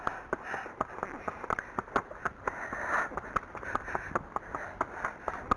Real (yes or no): yes